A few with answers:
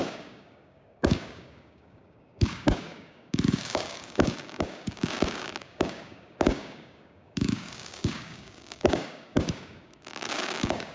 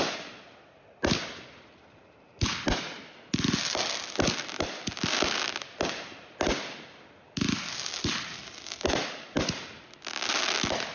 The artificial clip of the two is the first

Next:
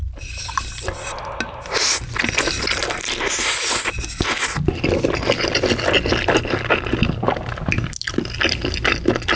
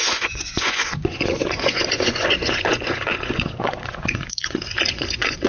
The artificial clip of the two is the second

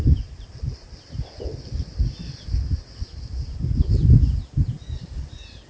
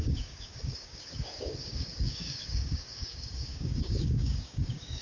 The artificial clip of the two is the second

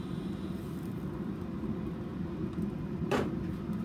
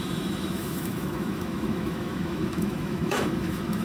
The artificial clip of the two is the second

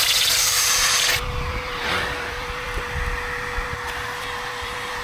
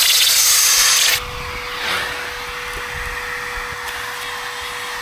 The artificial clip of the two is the first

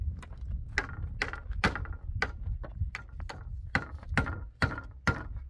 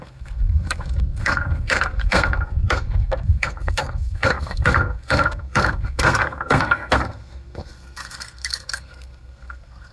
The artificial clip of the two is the second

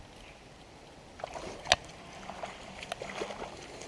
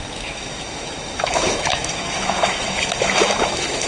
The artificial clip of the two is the second